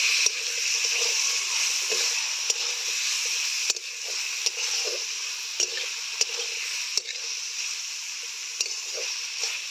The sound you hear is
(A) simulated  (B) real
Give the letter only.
B